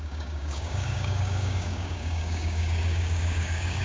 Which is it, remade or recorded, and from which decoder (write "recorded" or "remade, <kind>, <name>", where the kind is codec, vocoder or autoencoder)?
remade, codec, DAC